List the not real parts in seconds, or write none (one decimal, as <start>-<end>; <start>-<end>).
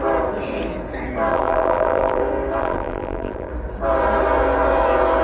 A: 1.3-2.2; 2.6-3.5